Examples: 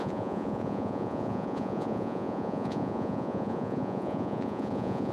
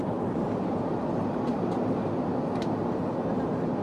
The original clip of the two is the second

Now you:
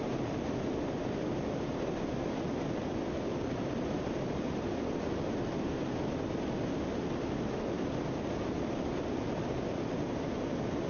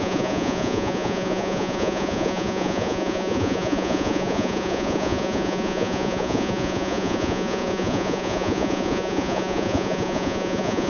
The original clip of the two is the first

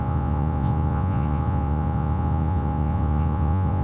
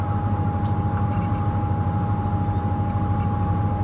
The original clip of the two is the second